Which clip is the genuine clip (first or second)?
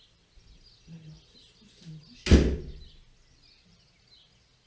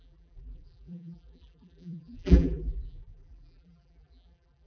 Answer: first